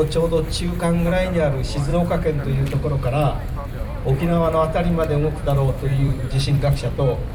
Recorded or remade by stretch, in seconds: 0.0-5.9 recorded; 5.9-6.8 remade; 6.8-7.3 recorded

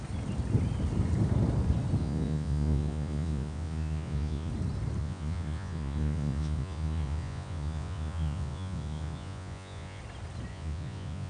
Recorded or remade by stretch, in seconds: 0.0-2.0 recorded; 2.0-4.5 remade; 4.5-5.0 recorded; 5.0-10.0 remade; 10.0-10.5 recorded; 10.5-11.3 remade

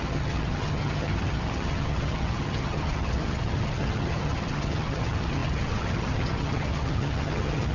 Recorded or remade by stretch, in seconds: 0.0-7.7 remade

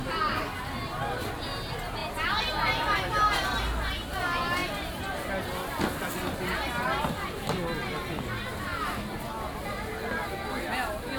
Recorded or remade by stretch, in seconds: 0.0-11.2 recorded

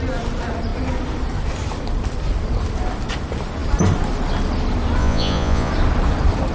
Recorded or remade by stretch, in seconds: 0.0-5.0 recorded; 5.0-5.7 remade; 5.7-6.5 recorded

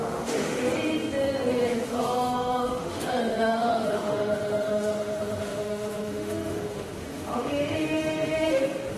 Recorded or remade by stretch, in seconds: 0.0-0.7 remade; 0.7-1.5 recorded; 1.5-9.0 remade

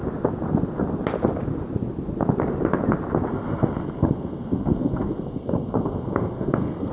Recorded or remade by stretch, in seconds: 0.0-3.3 recorded; 3.3-6.9 remade

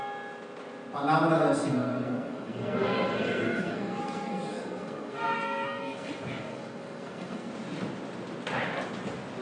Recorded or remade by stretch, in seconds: 0.0-1.3 recorded; 1.3-6.1 remade; 6.1-6.5 recorded; 6.5-7.5 remade; 7.5-9.4 recorded